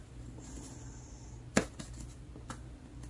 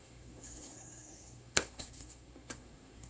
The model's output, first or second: second